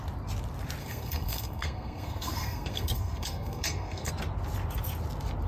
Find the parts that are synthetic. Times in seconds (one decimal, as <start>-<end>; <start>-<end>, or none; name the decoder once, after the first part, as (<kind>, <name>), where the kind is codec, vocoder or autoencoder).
0.8-4.1 (codec, SNAC)